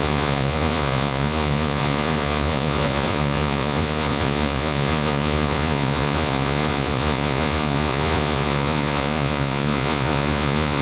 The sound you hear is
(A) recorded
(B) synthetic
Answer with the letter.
B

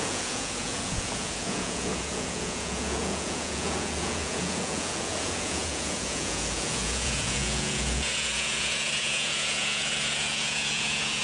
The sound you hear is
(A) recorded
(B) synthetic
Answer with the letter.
B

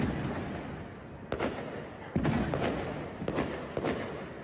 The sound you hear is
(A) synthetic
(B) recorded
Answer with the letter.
B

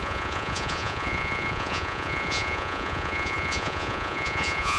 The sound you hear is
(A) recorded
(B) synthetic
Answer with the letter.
B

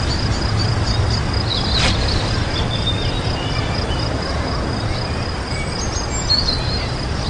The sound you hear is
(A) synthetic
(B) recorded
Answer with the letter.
B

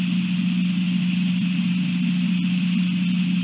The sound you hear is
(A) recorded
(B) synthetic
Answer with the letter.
A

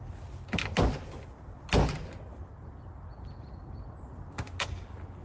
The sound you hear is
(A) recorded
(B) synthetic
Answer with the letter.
A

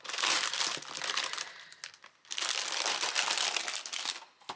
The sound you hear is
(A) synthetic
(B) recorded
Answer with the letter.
B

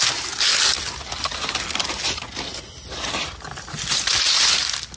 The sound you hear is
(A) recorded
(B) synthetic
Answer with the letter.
A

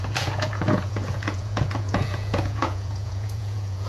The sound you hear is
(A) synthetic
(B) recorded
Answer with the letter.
A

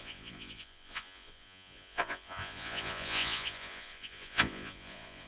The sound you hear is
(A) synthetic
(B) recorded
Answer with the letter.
A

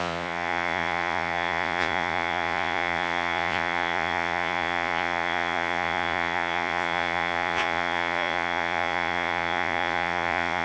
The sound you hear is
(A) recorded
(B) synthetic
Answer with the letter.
B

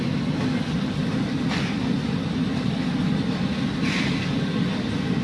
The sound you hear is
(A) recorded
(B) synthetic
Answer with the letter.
A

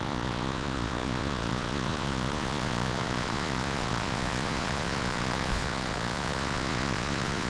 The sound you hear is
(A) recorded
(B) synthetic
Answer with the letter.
B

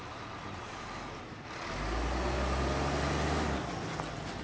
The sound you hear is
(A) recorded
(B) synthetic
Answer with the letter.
A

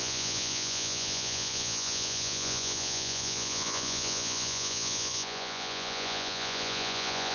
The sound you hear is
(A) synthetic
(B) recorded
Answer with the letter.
A